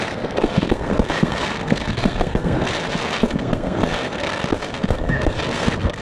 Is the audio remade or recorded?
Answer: remade